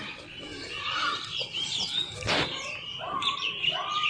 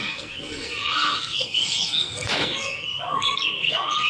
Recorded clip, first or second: first